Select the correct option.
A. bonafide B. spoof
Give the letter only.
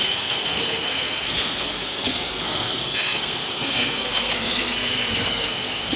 B